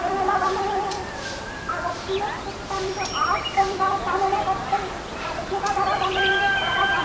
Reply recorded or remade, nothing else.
remade